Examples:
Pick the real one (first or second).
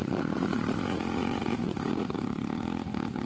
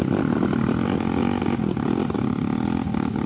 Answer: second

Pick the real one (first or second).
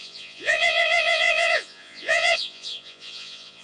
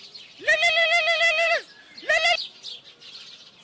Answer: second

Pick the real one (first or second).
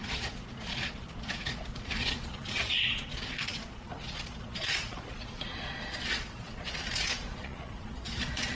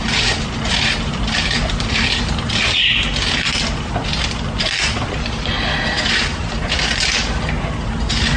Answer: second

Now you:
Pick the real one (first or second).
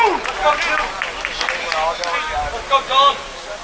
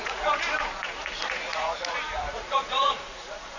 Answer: first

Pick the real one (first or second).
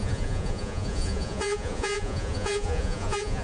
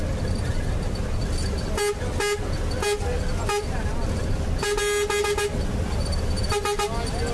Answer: second